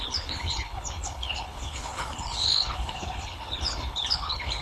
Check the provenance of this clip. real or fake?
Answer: fake